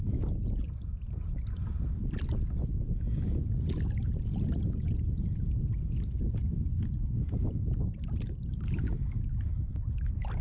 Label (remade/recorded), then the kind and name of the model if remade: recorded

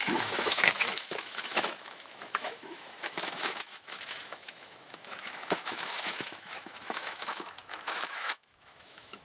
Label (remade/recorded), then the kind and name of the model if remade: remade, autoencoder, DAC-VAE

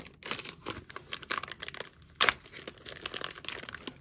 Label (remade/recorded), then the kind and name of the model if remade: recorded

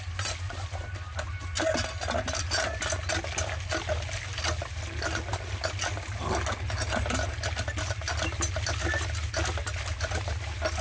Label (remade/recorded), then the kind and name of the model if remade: recorded